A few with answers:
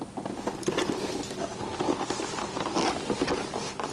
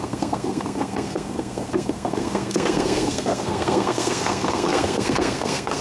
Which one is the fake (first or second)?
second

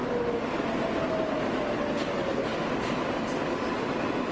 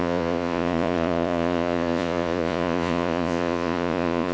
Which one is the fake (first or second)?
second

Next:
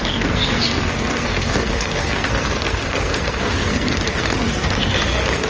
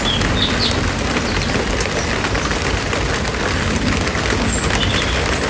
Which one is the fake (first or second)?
first